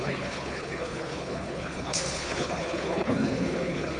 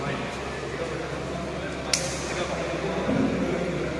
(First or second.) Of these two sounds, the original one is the second